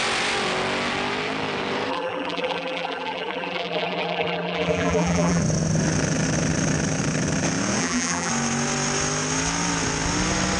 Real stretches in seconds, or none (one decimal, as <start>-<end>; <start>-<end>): 0.0-1.9; 5.4-7.8; 8.3-10.6